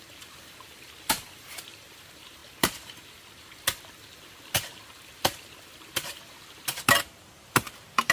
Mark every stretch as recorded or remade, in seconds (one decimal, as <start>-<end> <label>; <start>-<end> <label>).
0.0-2.4 remade; 2.4-5.0 recorded; 5.0-8.1 remade